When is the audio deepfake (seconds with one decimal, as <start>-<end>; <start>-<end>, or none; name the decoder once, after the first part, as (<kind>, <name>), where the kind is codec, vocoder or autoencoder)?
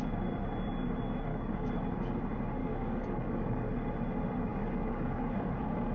1.3-1.8 (codec, DAC); 2.6-3.8; 4.5-5.5